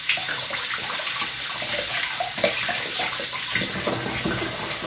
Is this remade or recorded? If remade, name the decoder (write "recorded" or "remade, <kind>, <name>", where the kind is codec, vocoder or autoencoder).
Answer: recorded